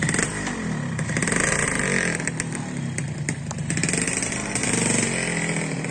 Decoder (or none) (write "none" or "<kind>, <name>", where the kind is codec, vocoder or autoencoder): none